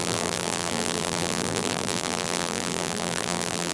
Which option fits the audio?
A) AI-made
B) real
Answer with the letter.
A